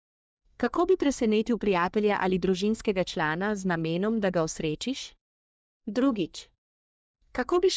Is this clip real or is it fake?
fake